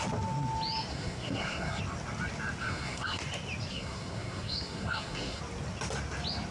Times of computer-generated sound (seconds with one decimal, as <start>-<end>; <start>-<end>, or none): 0.9-1.8; 2.6-3.2; 3.7-5.4